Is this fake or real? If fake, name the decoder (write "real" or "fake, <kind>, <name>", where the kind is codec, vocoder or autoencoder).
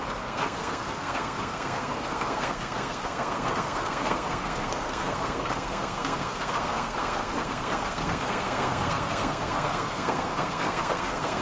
fake, codec, SNAC